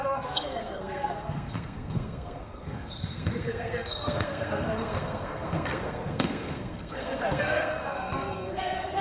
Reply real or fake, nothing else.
fake